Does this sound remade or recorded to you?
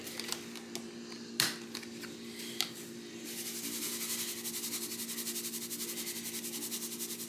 recorded